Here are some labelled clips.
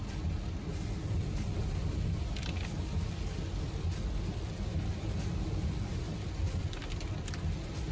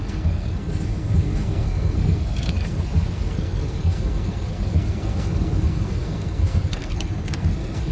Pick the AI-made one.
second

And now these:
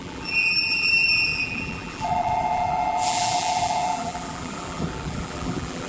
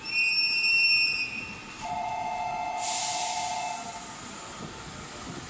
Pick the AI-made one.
first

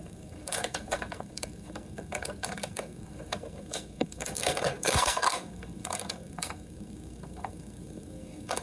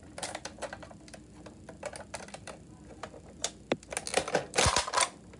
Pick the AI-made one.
first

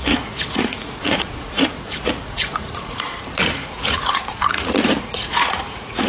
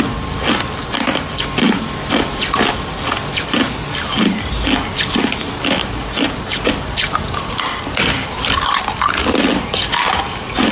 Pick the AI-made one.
first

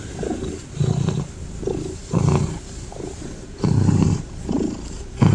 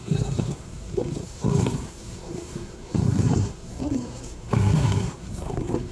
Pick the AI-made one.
second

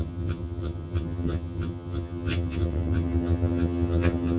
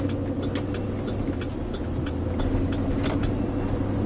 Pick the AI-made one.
first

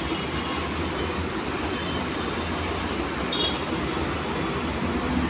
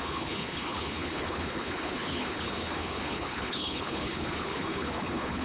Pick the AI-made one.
second